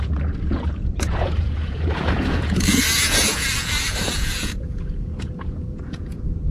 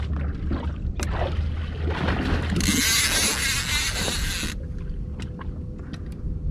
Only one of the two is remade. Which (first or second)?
first